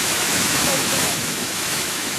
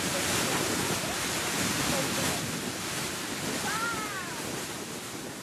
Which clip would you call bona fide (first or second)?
second